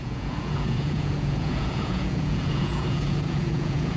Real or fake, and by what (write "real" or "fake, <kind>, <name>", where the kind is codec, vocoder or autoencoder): fake, vocoder, Vocos